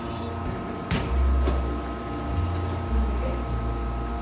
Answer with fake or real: real